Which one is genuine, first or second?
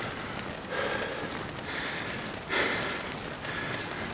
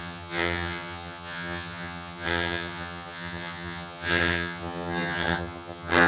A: first